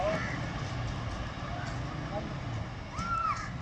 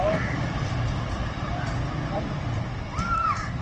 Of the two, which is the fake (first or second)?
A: second